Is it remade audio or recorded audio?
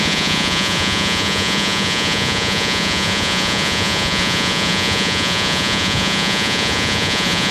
remade